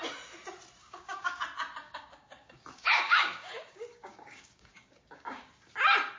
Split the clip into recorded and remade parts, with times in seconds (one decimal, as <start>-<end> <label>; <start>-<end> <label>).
0.0-0.8 recorded; 0.8-1.4 remade; 1.4-1.8 recorded; 1.8-5.5 remade; 5.5-6.2 recorded